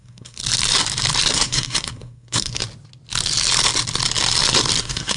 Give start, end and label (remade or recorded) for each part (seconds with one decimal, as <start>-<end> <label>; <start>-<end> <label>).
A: 0.0-0.4 remade; 0.4-1.3 recorded; 1.3-2.6 remade; 2.6-4.8 recorded; 4.8-5.2 remade